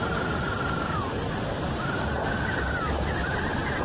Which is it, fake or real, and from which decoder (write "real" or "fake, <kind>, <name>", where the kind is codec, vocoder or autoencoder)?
fake, vocoder, BigVGAN v2